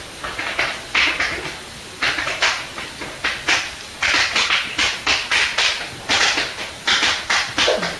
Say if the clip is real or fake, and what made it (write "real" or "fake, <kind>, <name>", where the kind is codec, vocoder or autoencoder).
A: real